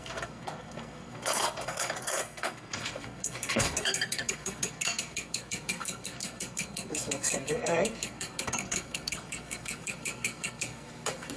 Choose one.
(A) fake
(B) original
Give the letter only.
A